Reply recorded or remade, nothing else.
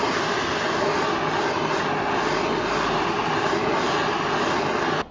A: recorded